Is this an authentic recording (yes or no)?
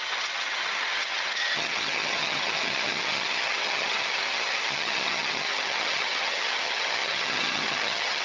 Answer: no